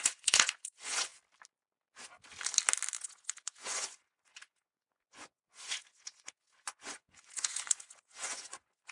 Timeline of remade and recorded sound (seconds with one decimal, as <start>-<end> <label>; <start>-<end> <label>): 0.0-1.1 remade; 1.1-3.0 recorded; 3.0-8.9 remade